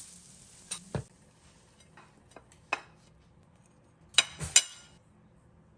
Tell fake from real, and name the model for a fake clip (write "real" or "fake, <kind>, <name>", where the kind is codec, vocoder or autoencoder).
real